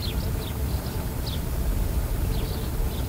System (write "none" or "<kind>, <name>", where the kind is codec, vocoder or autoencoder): none